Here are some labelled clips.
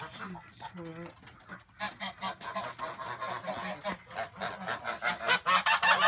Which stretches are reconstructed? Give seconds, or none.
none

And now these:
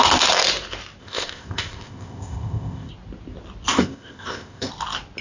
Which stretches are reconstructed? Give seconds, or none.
1.0-2.9 (codec, ZipCodec); 3.7-4.7

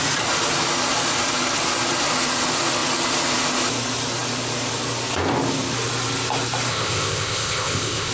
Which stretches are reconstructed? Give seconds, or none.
6.7-8.1 (codec, ZipCodec)

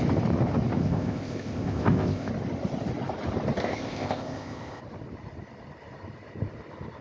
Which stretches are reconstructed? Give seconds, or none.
0.8-2.3 (codec, ZipCodec); 3.6-4.8

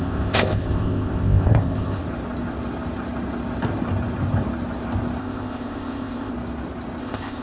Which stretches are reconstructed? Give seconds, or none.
0.0-2.0 (codec, ZipCodec); 5.2-6.3; 7.0-7.4

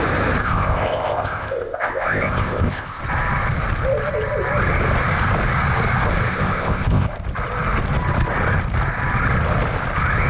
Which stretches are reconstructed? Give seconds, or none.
0.4-3.0 (codec, ZipCodec); 6.3-7.1

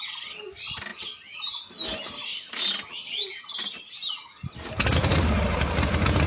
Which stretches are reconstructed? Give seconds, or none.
none

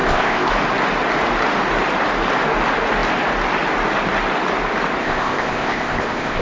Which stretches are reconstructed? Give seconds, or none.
0.0-0.5 (codec, ZipCodec); 5.0-6.4